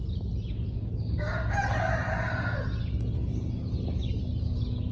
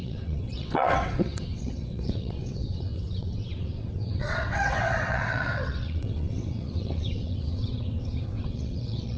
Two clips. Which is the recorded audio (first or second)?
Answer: first